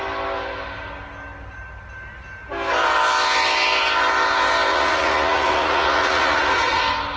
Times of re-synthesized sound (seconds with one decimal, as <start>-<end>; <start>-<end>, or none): 4.7-6.8